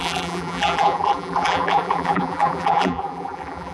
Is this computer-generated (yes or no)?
yes